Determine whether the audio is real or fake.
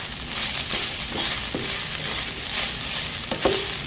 fake